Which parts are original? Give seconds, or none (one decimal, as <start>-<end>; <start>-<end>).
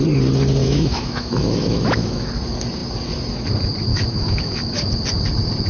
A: 0.0-0.6; 2.3-3.9; 4.9-5.7